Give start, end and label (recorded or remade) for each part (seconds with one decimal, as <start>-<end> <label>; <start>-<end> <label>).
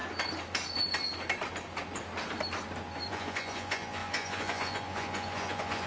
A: 0.0-3.1 recorded; 3.1-5.9 remade